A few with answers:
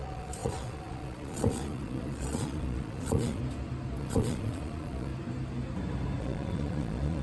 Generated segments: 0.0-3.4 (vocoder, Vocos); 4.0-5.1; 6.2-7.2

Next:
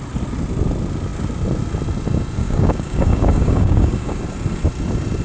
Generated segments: 2.4-4.2 (codec, DAC)

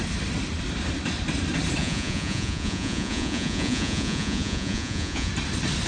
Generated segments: 1.8-5.3 (vocoder, Vocos)

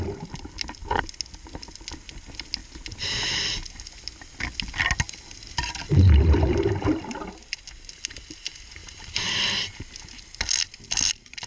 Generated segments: none

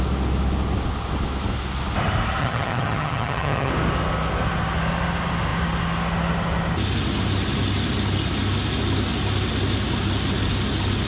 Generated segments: 2.4-3.7 (vocoder, HiFi-GAN)

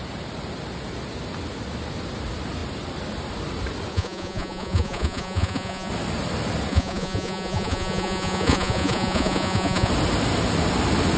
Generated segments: 3.9-5.9 (vocoder, Vocos); 6.7-9.9

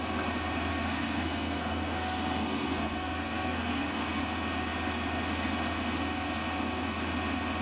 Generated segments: 0.7-4.2 (codec, SNAC)